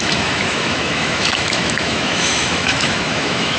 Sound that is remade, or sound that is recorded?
remade